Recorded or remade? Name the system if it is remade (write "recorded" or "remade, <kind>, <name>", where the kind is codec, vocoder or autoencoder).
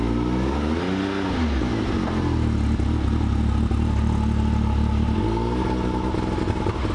recorded